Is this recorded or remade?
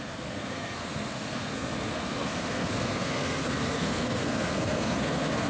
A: remade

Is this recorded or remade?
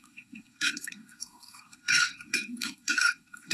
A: remade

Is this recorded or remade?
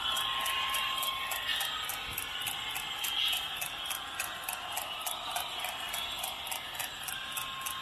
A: recorded